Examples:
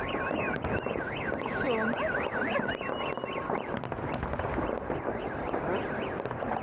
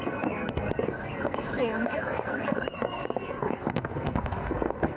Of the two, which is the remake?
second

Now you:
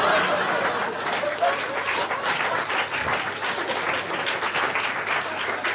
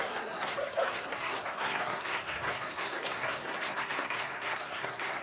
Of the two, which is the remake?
second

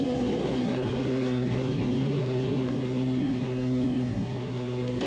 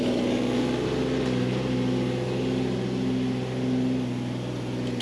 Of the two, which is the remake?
first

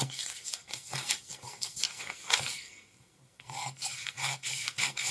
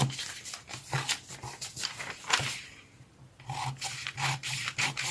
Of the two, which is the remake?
first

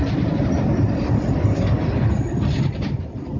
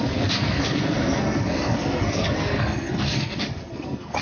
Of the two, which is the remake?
second